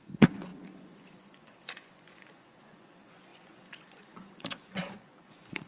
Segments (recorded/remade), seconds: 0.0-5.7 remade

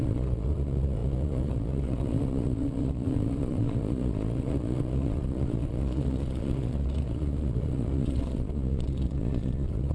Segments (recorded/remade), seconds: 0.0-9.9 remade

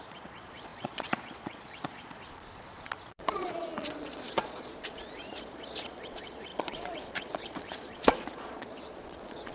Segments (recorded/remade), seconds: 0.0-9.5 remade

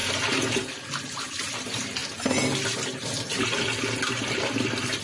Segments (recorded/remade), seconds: 0.0-5.0 recorded